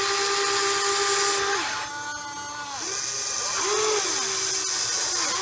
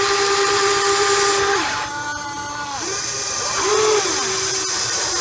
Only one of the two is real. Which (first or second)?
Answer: first